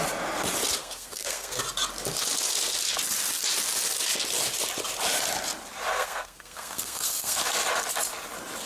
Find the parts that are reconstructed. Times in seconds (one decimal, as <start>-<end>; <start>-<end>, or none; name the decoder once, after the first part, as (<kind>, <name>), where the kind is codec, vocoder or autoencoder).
0.8-1.6 (codec, SNAC); 5.9-7.4